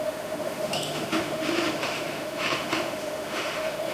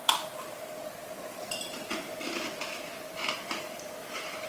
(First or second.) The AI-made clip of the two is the first